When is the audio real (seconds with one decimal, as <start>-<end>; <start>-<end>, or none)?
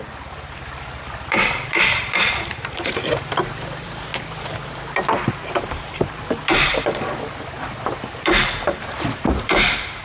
4.1-5.5